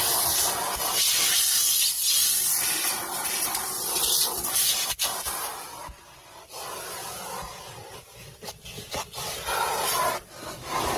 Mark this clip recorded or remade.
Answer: remade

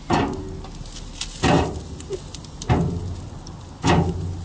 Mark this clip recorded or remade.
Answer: recorded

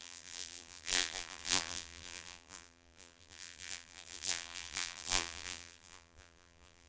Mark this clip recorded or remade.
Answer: remade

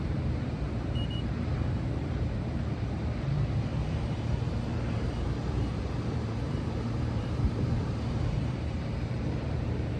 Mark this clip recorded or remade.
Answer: remade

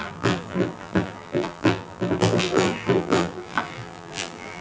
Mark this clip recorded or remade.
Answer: remade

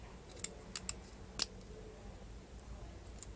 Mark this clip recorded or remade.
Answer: recorded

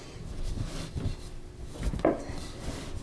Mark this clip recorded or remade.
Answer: recorded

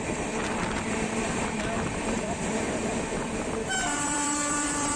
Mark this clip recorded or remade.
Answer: remade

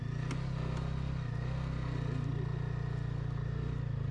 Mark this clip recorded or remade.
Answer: recorded